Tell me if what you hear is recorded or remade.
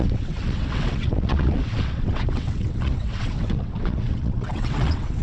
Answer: remade